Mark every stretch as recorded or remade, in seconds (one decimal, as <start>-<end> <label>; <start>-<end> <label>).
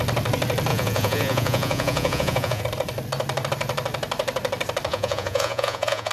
0.0-0.7 recorded; 0.7-2.6 remade; 2.6-4.9 recorded; 4.9-6.1 remade